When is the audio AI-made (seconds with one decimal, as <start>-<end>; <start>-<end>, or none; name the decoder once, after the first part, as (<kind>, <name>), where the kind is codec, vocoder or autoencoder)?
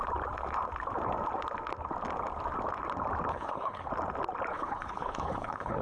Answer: 3.3-3.9 (codec, HILCodec); 4.5-5.8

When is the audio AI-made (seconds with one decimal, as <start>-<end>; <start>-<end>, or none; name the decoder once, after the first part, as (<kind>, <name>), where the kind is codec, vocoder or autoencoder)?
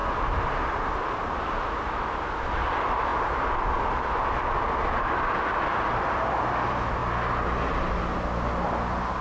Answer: none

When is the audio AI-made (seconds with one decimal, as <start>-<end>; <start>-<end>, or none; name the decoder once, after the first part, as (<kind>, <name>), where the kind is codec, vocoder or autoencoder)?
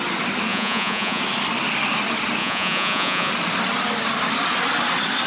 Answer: 0.5-1.2 (vocoder, Vocos); 2.4-3.3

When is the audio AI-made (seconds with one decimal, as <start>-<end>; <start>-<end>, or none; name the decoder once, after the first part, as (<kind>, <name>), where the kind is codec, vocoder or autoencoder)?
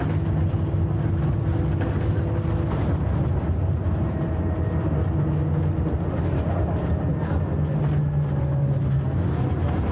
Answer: none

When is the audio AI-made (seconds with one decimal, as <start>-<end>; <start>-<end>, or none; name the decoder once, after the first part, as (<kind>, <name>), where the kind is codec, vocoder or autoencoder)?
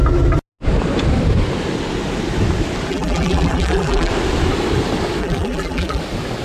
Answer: 2.9-4.1 (vocoder, BigVGAN v2); 5.2-6.0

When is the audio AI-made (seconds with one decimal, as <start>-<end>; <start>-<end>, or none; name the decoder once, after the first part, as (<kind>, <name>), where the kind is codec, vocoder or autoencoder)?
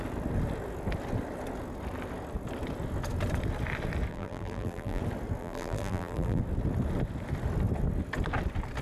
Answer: 4.1-5.0 (vocoder, BigVGAN v2); 5.4-6.4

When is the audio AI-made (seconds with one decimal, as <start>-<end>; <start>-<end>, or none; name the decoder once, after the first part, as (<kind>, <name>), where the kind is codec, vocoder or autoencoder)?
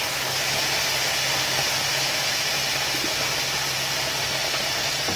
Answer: 1.9-2.5 (autoencoder, DAC-VAE)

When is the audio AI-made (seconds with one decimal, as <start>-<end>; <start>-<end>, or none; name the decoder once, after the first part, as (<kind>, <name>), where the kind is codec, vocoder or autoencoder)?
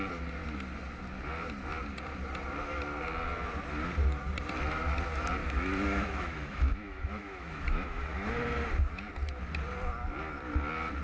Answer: 5.4-8.3 (autoencoder, DAC-VAE)